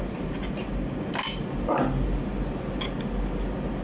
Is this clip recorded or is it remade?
recorded